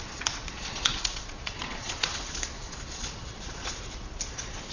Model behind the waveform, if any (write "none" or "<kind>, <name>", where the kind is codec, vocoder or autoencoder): vocoder, Vocos